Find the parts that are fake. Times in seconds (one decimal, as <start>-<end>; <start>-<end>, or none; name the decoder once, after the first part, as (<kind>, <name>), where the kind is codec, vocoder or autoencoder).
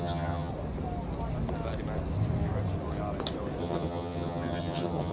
0.0-0.5 (vocoder, HiFi-GAN); 3.6-5.1